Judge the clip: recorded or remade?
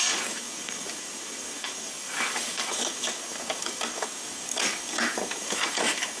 remade